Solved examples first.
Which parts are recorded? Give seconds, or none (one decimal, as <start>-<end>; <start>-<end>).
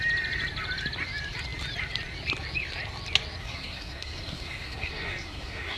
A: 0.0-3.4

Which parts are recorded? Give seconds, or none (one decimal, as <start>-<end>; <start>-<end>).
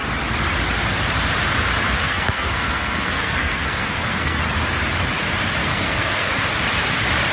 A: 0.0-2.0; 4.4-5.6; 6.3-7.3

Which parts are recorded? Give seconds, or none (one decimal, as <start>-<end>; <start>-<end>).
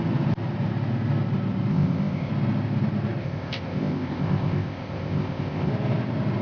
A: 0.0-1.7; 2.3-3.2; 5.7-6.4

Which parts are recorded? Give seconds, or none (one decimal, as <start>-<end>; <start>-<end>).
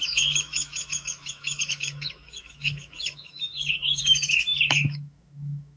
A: none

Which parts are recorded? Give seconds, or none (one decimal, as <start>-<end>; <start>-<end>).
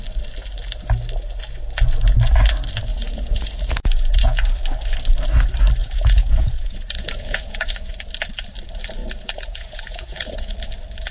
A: 0.0-2.9; 4.6-5.8; 7.9-9.0; 10.5-11.1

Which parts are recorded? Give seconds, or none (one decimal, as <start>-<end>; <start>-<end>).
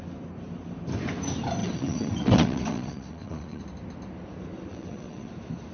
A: 0.0-1.6; 3.6-4.7; 5.3-5.7